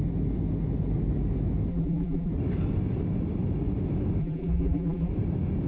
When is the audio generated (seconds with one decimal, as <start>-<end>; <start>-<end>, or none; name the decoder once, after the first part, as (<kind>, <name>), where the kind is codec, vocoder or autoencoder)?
1.7-2.3 (vocoder, BigVGAN v2); 4.2-5.1